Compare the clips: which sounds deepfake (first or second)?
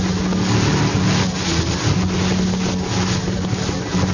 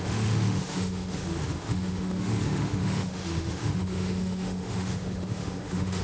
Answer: second